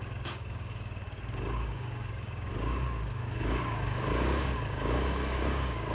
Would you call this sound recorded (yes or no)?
no